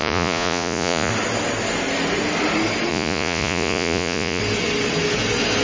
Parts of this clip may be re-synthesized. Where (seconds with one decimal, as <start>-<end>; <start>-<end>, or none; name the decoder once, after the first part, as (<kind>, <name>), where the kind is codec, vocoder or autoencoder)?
0.0-1.1 (vocoder, Vocos); 2.9-4.4